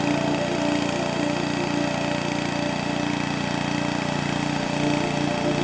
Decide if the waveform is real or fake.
real